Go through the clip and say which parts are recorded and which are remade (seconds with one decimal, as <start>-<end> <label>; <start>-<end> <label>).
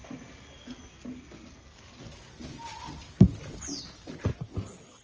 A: 0.0-5.0 recorded